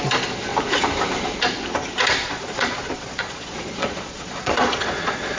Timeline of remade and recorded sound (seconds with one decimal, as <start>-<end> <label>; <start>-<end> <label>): 0.0-2.2 recorded; 2.2-5.4 remade